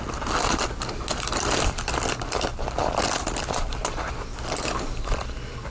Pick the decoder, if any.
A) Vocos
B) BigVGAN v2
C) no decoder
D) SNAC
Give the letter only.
C